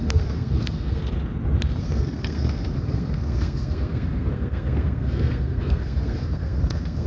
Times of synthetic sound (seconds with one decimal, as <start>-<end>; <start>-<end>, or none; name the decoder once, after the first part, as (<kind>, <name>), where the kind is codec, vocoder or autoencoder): 0.0-1.0 (codec, SNAC); 1.8-7.1